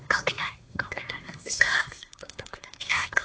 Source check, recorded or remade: remade